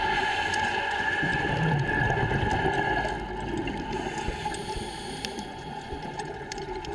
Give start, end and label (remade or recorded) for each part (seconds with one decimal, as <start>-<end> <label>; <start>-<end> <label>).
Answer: 0.0-1.3 remade; 1.3-5.4 recorded; 5.4-6.9 remade